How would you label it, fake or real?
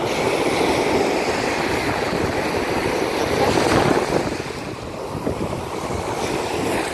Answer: real